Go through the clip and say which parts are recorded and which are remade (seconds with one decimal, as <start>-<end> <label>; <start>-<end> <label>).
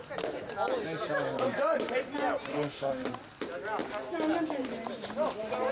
0.0-2.5 recorded; 2.5-3.1 remade; 3.1-5.7 recorded